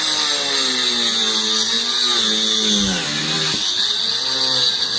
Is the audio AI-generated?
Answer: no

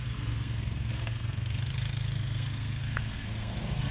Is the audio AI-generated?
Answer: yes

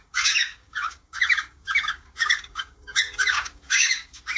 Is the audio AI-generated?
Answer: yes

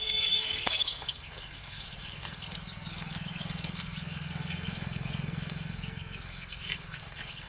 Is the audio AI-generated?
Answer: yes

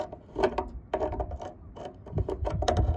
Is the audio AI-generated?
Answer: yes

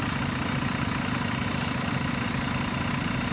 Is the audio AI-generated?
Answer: no